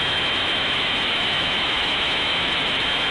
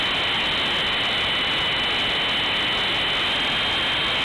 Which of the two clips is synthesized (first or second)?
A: first